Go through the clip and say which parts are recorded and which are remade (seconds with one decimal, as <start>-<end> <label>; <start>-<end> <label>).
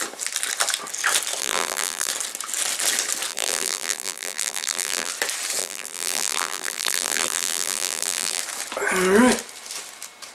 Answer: 0.0-1.4 recorded; 1.4-2.1 remade; 2.1-3.3 recorded; 3.3-5.1 remade; 5.1-5.6 recorded; 5.6-8.4 remade; 8.4-10.3 recorded